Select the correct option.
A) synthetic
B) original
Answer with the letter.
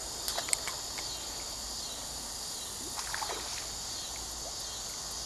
B